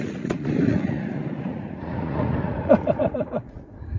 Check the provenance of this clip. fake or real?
fake